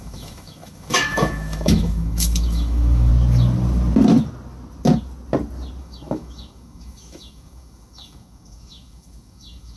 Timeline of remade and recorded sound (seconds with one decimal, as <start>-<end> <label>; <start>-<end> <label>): 0.0-3.1 remade; 3.1-5.8 recorded; 5.8-9.8 remade